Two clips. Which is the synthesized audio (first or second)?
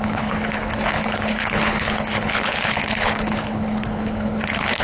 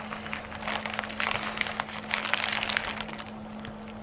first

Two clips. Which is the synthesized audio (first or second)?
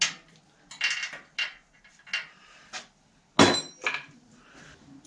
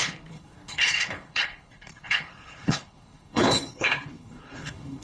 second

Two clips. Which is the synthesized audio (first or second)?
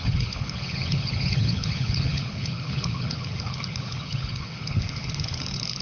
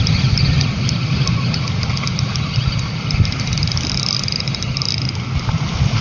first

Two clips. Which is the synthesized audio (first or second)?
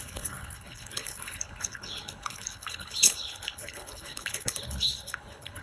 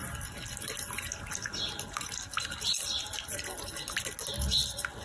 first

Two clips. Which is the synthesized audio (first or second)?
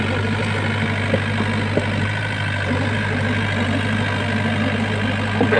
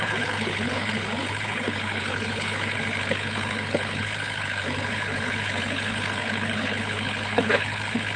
second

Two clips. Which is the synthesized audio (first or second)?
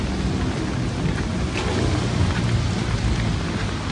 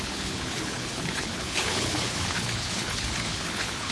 second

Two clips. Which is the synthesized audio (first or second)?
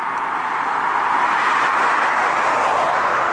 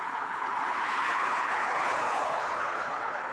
second